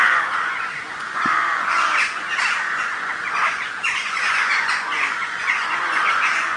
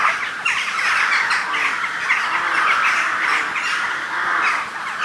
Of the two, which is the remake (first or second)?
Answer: first